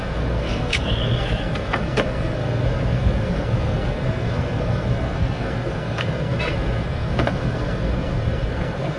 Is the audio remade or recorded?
remade